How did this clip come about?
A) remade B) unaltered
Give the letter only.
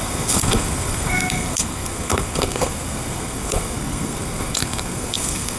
A